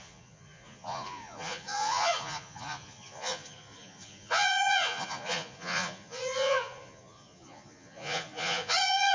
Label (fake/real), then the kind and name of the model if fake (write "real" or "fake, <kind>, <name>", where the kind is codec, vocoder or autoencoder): fake, vocoder, Vocos